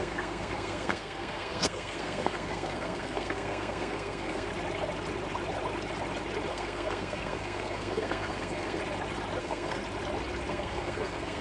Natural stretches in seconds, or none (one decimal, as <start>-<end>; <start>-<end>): 4.5-6.5; 8.8-9.4; 9.8-10.5